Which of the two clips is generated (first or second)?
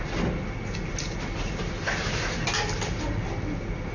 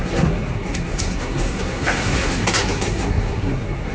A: second